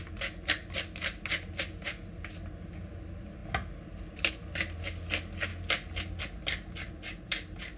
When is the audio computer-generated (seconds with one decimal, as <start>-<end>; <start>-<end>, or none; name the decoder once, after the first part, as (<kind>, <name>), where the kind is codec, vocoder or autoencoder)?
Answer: none